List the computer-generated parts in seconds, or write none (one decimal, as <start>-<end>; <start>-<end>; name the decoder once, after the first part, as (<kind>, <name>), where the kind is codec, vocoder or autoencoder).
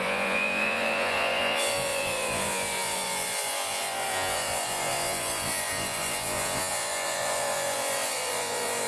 0.0-8.9 (vocoder, Vocos)